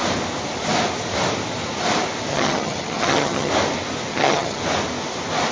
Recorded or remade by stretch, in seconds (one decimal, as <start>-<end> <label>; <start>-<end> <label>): 0.0-2.3 recorded; 2.3-3.5 remade; 3.5-4.1 recorded; 4.1-4.6 remade; 4.6-5.5 recorded